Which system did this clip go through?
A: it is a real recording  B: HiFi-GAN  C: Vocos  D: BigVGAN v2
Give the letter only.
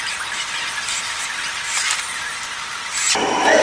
D